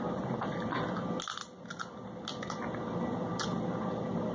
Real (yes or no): yes